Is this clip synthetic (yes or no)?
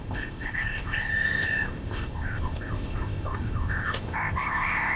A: yes